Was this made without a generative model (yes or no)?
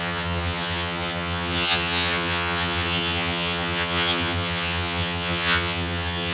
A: no